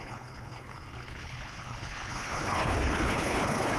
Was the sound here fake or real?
fake